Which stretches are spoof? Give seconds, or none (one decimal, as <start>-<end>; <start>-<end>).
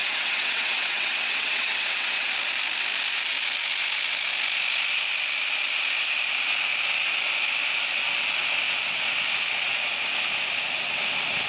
0.0-2.3